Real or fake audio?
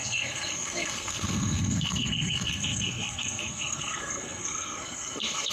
fake